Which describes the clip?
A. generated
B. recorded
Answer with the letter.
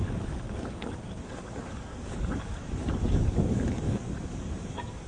A